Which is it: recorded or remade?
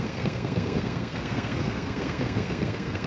remade